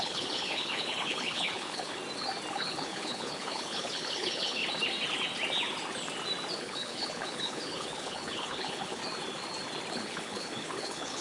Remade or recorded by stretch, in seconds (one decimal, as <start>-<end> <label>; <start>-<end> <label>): 0.0-2.0 remade; 2.0-2.5 recorded; 2.5-4.6 remade; 4.6-6.6 recorded; 6.6-9.0 remade; 9.0-9.9 recorded; 9.9-11.2 remade